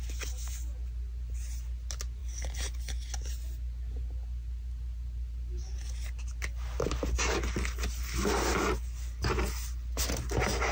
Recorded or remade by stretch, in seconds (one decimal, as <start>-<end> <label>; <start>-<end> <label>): 0.0-10.7 recorded